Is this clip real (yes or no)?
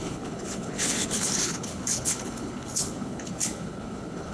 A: no